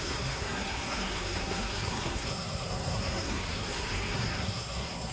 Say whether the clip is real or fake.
fake